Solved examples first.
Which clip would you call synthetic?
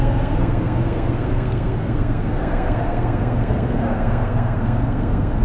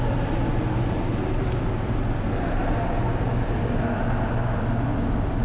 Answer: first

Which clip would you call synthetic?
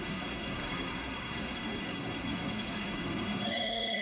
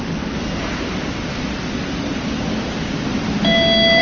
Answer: first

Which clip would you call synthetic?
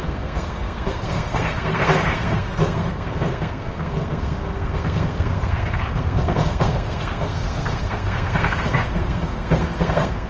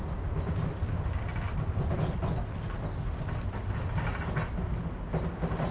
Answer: first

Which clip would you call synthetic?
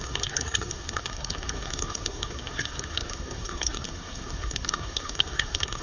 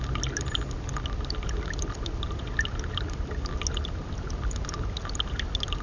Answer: first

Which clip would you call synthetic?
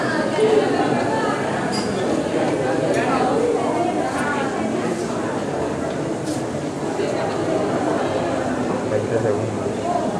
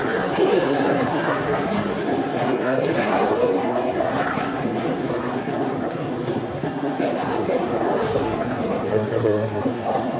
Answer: second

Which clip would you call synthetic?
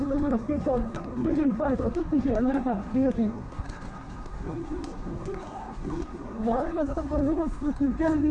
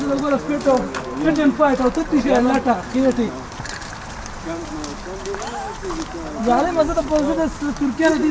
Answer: first